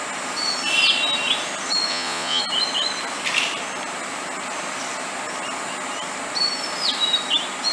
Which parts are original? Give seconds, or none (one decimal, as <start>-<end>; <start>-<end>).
0.0-1.9; 2.4-7.7